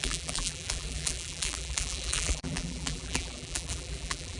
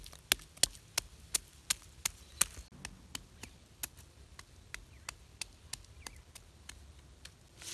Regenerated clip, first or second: first